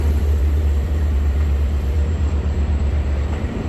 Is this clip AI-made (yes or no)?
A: yes